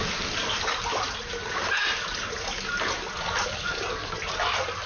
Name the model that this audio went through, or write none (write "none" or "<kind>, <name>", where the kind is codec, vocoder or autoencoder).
none